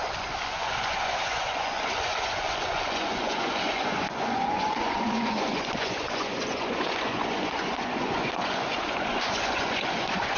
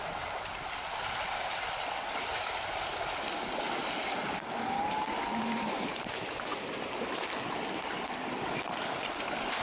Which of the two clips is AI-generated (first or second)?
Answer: first